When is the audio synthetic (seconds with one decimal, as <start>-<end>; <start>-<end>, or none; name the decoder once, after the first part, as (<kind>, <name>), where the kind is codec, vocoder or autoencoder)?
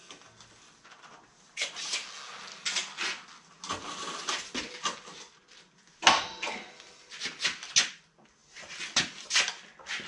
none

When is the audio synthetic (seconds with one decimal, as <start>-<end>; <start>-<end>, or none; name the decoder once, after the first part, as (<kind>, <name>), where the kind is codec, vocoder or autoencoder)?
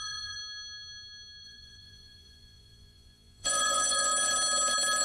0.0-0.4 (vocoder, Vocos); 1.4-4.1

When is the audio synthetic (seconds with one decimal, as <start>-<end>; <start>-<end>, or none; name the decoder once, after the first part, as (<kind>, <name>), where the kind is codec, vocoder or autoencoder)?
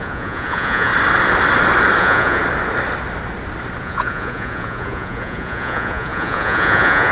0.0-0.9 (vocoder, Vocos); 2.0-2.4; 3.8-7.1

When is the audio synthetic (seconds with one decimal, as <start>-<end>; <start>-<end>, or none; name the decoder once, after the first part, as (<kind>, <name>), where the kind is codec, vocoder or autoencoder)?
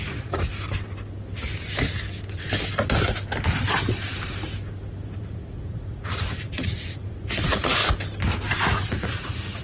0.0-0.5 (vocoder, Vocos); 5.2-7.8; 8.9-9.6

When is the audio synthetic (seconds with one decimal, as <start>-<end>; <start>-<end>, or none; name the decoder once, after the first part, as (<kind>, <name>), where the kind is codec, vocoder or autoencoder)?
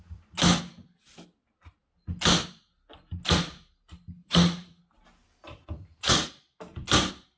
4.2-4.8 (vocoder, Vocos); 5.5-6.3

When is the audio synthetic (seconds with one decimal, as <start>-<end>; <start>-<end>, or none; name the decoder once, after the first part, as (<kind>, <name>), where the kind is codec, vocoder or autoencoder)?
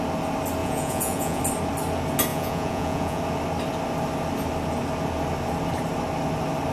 0.6-1.4 (vocoder, Vocos); 2.3-3.2